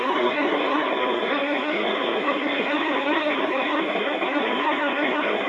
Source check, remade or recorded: remade